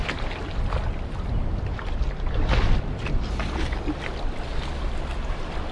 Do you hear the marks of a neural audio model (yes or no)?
no